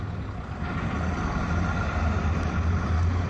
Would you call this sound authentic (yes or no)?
yes